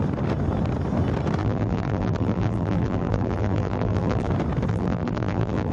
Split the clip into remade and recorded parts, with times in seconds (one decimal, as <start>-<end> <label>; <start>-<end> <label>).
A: 0.0-1.4 recorded; 1.4-4.3 remade; 4.3-4.7 recorded; 4.7-5.7 remade